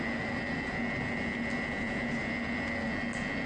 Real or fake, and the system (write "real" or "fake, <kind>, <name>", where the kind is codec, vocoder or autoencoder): real